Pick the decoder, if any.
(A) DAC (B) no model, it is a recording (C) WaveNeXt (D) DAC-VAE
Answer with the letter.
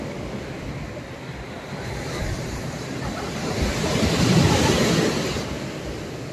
B